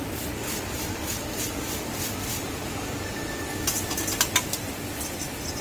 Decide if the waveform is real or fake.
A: fake